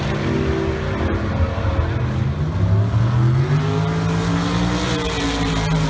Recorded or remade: recorded